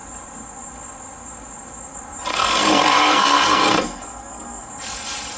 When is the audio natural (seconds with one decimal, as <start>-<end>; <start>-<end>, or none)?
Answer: 0.0-2.3; 4.7-5.4